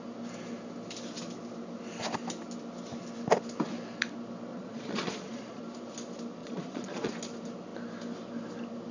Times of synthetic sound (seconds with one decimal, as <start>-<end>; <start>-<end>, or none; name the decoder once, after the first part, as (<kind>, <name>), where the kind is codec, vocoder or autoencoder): 4.5-5.6 (vocoder, Vocos); 6.4-7.1